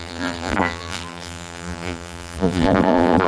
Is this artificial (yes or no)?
yes